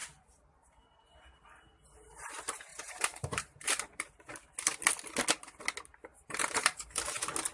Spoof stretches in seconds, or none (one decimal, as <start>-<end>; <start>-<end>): 2.7-4.1; 6.1-7.0